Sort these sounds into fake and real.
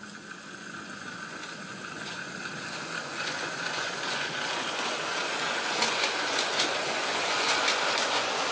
fake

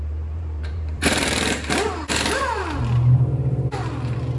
fake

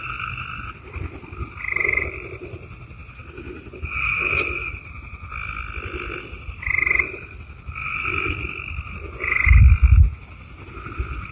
real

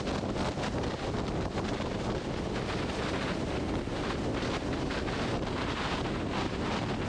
real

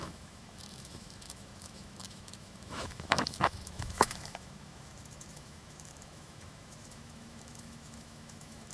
fake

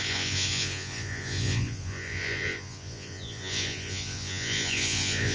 fake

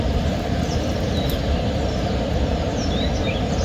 real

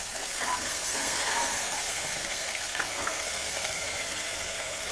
fake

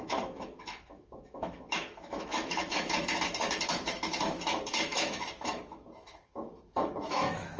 fake